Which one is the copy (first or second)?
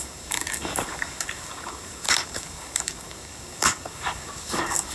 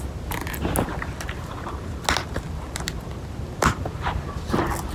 first